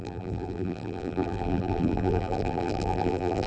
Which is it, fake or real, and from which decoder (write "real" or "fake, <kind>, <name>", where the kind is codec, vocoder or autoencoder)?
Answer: fake, vocoder, BigVGAN v2